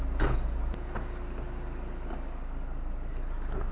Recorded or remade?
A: recorded